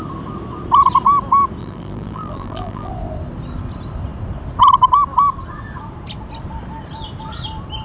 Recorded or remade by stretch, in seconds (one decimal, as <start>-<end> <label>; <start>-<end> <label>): 0.0-1.6 recorded; 1.6-2.9 remade; 2.9-7.8 recorded